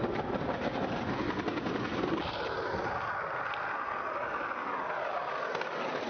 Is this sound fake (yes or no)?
no